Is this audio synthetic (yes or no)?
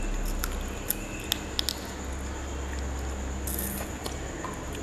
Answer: no